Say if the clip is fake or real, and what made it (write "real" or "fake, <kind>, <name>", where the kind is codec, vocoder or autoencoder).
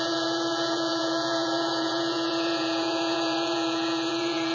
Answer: fake, vocoder, Vocos